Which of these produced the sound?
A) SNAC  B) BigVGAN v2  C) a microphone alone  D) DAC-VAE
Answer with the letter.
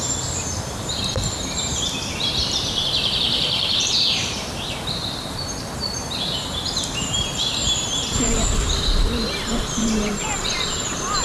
B